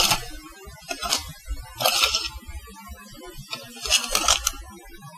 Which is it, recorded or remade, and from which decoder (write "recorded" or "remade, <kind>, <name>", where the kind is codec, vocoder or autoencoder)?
recorded